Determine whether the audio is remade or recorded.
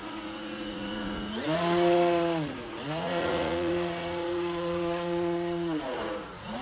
remade